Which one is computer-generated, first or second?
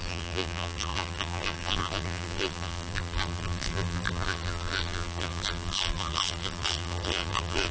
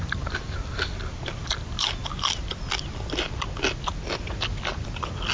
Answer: first